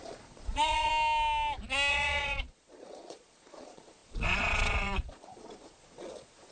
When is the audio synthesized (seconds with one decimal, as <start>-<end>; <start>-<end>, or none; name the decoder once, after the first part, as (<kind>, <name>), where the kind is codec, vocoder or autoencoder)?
0.0-0.9 (vocoder, Vocos); 1.9-6.5